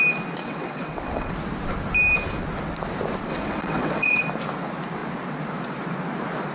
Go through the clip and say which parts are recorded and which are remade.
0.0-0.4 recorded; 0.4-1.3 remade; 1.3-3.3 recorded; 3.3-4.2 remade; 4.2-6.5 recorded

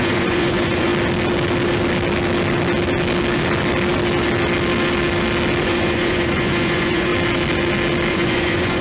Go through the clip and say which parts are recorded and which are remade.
0.0-0.9 remade; 0.9-5.6 recorded; 5.6-7.1 remade; 7.1-8.1 recorded; 8.1-8.8 remade

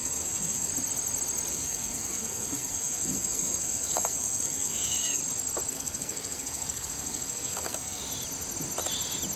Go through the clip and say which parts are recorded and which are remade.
0.0-0.7 remade; 0.7-1.5 recorded; 1.5-5.2 remade; 5.2-5.7 recorded; 5.7-8.0 remade; 8.0-9.4 recorded

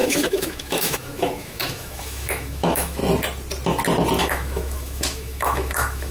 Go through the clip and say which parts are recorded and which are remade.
0.0-3.0 remade; 3.0-4.2 recorded; 4.2-6.1 remade

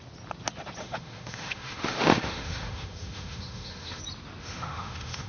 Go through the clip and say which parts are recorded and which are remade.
0.0-0.8 recorded; 0.8-4.0 remade; 4.0-4.4 recorded; 4.4-5.3 remade

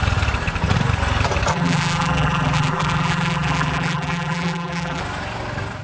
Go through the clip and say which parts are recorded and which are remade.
0.0-1.5 recorded; 1.5-5.0 remade; 5.0-5.8 recorded